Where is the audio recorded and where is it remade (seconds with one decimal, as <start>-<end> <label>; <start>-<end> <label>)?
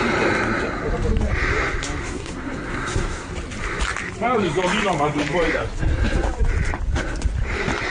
0.0-2.0 recorded; 2.0-3.3 remade; 3.3-7.9 recorded